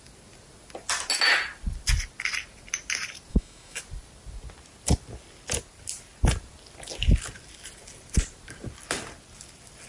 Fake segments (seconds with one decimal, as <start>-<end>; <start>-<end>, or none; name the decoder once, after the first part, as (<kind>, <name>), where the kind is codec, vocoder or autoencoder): 3.3-3.8 (autoencoder, DAC-VAE)